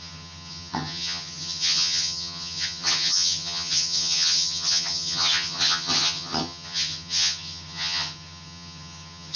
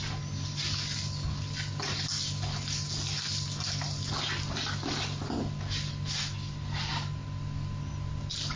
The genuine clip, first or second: second